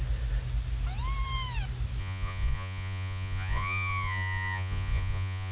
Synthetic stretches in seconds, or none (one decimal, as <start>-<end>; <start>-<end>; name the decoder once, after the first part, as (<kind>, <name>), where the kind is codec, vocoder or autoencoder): 2.0-5.5 (vocoder, Vocos)